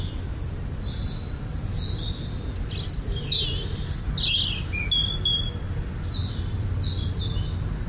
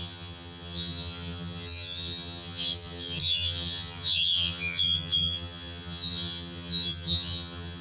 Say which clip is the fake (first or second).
second